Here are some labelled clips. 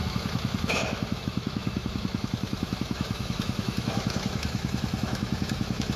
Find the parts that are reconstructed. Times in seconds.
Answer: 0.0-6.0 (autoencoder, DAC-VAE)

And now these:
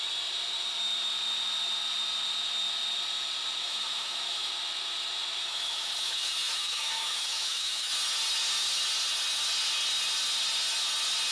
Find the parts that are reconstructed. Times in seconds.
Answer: 3.6-4.5 (autoencoder, DAC-VAE); 5.4-7.9